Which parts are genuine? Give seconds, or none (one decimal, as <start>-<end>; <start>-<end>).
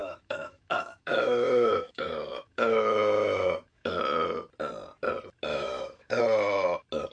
4.0-5.5; 6.2-7.1